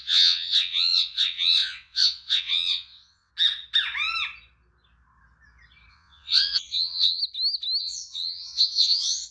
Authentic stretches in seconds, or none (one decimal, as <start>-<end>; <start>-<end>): 3.3-5.9; 7.2-7.8